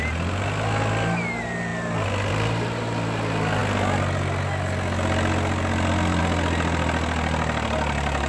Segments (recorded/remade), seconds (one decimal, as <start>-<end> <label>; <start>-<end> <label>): 0.0-8.3 recorded